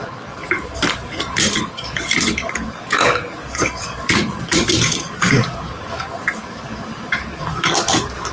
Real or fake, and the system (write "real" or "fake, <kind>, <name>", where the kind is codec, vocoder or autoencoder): fake, codec, DAC